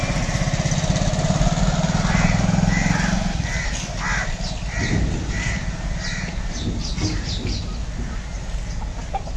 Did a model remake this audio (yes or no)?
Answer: no